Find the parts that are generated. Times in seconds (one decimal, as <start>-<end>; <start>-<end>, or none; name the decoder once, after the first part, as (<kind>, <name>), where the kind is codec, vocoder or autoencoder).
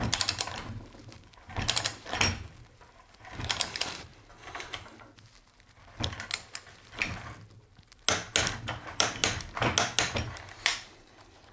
0.0-4.1 (vocoder, BigVGAN v2); 8.6-9.2; 10.3-11.5